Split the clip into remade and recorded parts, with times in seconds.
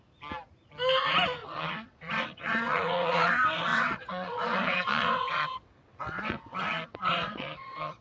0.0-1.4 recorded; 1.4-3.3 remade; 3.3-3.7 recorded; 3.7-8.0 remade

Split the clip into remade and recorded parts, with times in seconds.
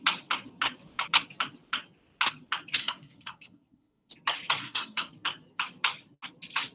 0.0-2.8 recorded; 2.8-4.1 remade; 4.1-4.6 recorded; 4.6-5.1 remade; 5.1-6.7 recorded